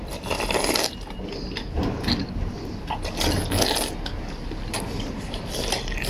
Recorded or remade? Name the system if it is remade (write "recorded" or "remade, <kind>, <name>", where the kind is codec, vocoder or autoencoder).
recorded